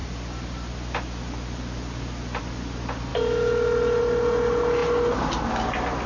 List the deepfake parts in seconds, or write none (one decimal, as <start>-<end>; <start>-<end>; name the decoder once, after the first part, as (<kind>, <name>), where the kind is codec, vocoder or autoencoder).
none